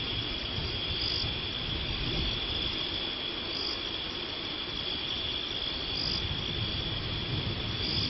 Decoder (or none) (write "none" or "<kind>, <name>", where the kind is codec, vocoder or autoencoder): none